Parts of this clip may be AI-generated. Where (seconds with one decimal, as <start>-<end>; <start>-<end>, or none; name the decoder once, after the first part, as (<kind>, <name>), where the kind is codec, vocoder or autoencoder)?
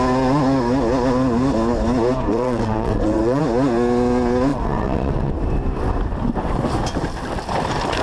2.3-3.4 (vocoder, WaveNeXt); 4.5-5.3